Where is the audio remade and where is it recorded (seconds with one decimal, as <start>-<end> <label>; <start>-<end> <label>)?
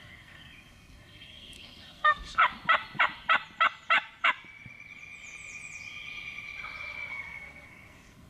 0.0-2.4 remade; 2.4-7.1 recorded; 7.1-8.3 remade